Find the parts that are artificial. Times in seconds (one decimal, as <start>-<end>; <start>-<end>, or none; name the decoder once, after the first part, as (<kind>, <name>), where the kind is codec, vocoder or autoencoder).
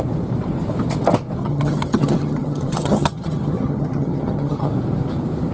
1.4-4.7 (vocoder, HiFi-GAN)